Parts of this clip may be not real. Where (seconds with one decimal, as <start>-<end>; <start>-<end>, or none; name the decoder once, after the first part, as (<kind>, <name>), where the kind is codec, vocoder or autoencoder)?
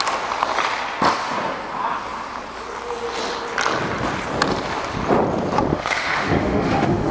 5.7-7.1 (autoencoder, DAC-VAE)